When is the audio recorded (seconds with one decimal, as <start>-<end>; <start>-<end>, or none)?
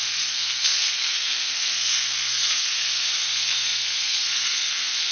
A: none